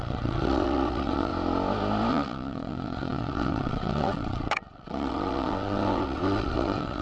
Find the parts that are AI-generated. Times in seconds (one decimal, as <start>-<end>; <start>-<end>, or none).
0.0-1.3; 2.1-7.0